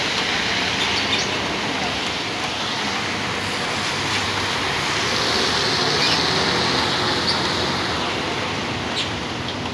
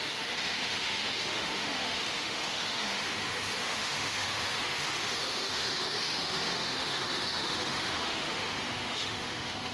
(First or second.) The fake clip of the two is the second